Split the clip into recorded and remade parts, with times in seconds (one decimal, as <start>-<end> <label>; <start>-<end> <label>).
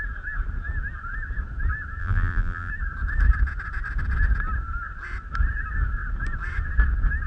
0.0-2.0 recorded; 2.0-2.7 remade; 2.7-7.3 recorded